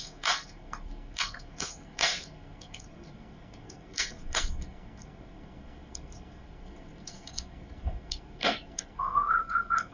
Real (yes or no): no